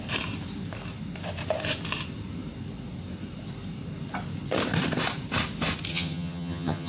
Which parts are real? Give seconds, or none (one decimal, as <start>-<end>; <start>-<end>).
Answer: 0.0-5.9